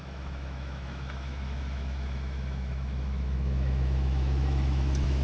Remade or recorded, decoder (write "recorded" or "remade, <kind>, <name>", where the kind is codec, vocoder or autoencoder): remade, autoencoder, DAC-VAE